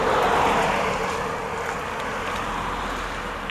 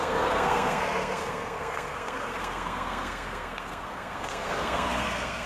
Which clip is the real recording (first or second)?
first